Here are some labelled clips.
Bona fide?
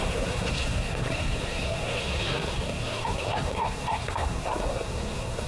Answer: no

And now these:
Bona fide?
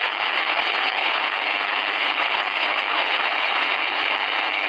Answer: no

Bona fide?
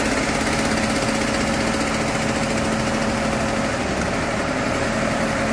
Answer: yes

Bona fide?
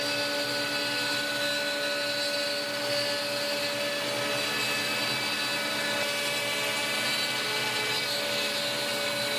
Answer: yes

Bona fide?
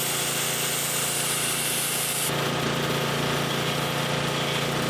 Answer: yes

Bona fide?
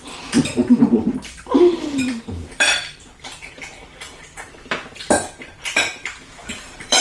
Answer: no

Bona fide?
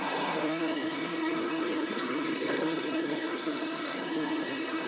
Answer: no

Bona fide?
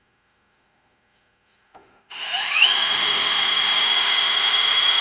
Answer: no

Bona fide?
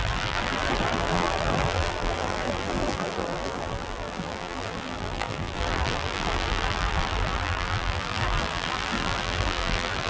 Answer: no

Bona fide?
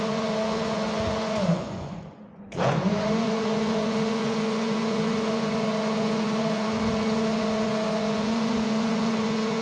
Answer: no